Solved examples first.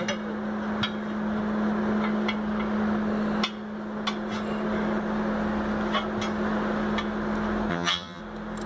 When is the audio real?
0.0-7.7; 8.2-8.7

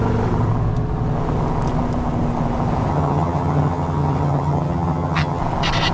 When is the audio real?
0.0-2.9; 5.4-5.9

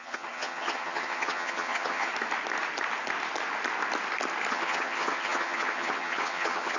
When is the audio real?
2.1-4.5

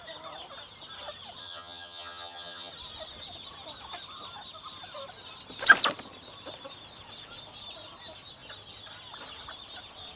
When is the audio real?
0.0-1.4; 2.7-10.2